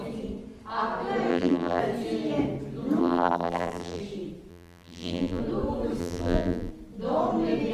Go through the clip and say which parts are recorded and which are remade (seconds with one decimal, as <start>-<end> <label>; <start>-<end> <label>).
0.0-1.3 recorded; 1.3-1.8 remade; 1.8-3.0 recorded; 3.0-4.0 remade; 4.0-4.5 recorded; 4.5-5.4 remade; 5.4-6.0 recorded; 6.0-6.7 remade; 6.7-7.7 recorded

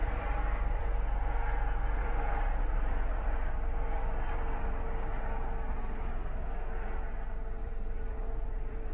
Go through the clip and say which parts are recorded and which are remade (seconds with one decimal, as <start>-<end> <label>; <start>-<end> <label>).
0.0-0.8 remade; 0.8-2.0 recorded; 2.0-3.5 remade; 3.5-7.6 recorded; 7.6-8.9 remade

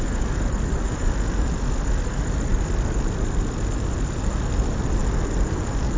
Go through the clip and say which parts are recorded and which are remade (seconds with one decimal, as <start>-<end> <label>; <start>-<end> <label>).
0.0-2.5 recorded; 2.5-4.1 remade; 4.1-6.0 recorded

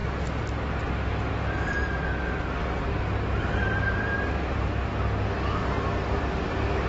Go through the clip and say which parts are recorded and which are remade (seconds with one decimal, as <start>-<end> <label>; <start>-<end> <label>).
0.0-3.4 recorded; 3.4-4.9 remade; 4.9-5.6 recorded; 5.6-6.9 remade